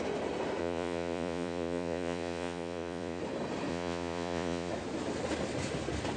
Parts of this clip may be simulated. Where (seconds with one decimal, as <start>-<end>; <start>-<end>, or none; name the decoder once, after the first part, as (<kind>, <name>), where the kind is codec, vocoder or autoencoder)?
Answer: 0.6-3.2 (vocoder, Vocos); 3.7-4.7